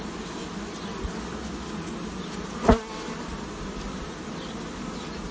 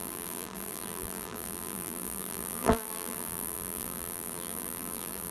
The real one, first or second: first